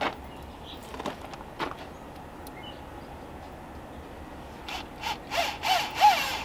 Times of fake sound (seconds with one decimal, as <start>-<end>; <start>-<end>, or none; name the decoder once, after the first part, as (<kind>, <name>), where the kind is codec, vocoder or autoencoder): none